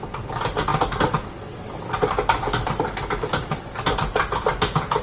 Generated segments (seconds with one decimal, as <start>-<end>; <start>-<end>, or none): none

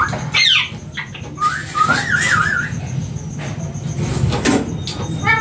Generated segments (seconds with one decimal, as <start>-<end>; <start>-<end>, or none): none

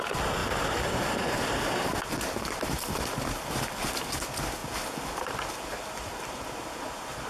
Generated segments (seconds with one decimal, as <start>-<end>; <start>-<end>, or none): 0.4-2.1